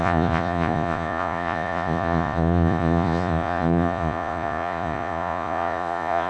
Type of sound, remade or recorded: remade